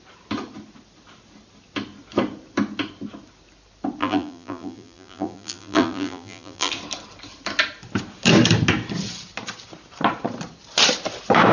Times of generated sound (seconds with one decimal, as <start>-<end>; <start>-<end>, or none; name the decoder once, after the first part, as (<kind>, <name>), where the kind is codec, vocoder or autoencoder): 4.0-6.7 (vocoder, BigVGAN v2)